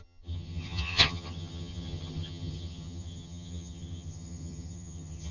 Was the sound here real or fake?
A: fake